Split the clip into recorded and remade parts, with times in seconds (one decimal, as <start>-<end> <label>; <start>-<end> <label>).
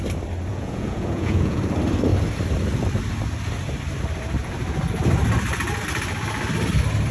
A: 0.0-0.5 recorded; 0.5-1.6 remade; 1.6-7.1 recorded